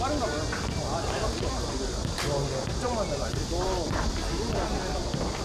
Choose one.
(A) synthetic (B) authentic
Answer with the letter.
B